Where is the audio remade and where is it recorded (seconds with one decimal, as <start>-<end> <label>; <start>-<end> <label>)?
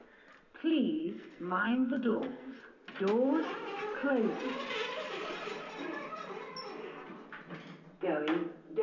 0.0-1.0 recorded; 1.0-2.6 remade; 2.6-8.8 recorded